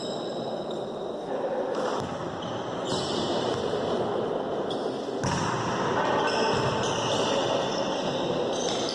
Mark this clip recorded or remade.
recorded